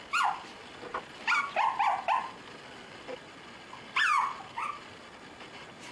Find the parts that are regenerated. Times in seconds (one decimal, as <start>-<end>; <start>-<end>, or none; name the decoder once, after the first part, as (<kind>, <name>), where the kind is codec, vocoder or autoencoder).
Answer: none